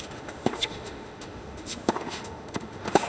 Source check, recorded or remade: remade